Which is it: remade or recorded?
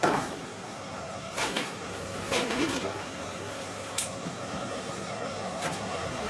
remade